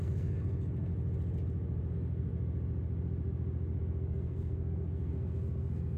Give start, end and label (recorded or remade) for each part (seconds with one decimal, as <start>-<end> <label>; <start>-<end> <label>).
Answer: 0.0-0.9 remade; 0.9-1.9 recorded; 1.9-2.3 remade; 2.3-3.8 recorded; 3.8-6.0 remade